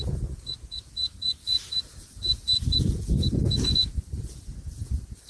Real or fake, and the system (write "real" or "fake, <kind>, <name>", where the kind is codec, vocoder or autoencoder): fake, vocoder, Vocos